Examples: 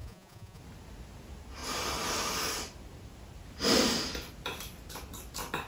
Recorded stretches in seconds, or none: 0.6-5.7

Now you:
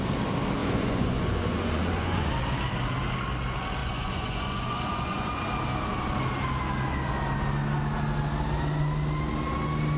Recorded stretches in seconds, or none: 0.0-0.6; 2.3-3.8; 5.4-10.0

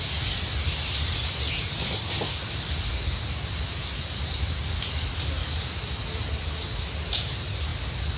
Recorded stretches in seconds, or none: 0.0-8.2

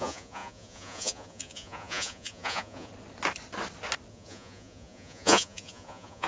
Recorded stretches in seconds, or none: 2.9-4.1

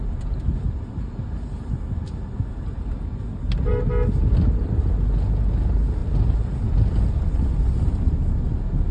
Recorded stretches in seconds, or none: 0.0-8.9

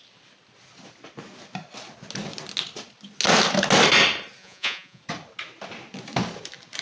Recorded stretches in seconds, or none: 0.0-4.4; 5.0-6.8

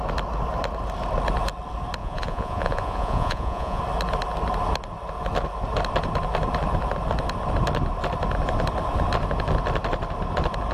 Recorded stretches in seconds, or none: 0.0-2.0; 3.8-10.7

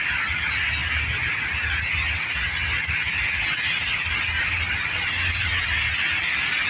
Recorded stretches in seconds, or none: 0.0-6.7